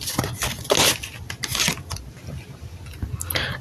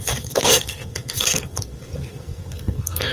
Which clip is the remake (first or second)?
second